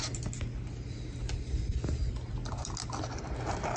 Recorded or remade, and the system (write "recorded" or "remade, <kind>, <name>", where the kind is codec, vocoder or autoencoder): recorded